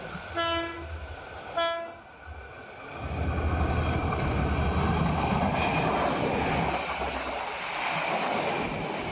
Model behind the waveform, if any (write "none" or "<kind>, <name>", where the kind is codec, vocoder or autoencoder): none